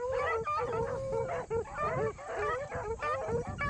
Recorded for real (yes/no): yes